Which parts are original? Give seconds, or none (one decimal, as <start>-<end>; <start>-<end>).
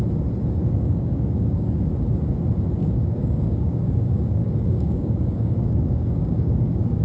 0.0-0.6; 1.9-2.8